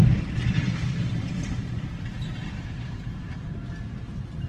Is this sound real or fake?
real